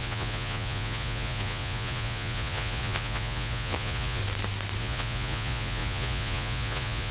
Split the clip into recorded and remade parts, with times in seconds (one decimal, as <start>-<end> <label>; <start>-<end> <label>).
0.0-4.2 remade; 4.2-4.8 recorded; 4.8-7.1 remade